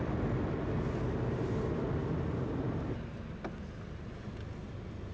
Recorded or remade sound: recorded